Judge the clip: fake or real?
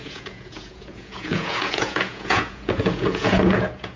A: fake